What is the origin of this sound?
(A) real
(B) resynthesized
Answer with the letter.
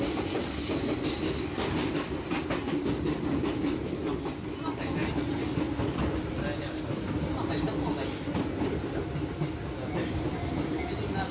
A